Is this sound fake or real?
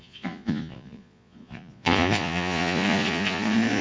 fake